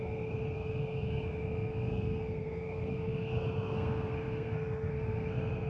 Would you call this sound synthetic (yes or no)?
yes